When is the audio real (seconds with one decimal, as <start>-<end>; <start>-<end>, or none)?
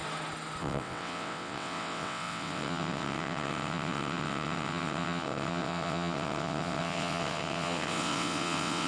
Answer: 0.0-0.6